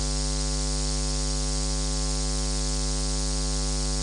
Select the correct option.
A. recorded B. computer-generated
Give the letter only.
A